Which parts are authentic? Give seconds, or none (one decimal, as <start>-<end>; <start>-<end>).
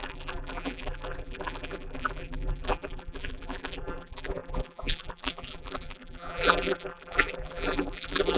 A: none